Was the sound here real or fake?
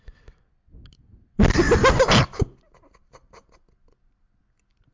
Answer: real